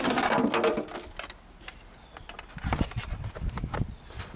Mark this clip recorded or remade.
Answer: recorded